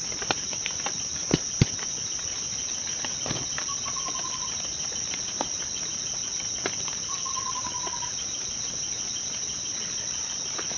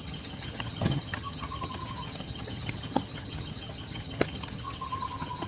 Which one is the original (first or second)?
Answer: first